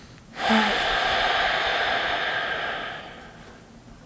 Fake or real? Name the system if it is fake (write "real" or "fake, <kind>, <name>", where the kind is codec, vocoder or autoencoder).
real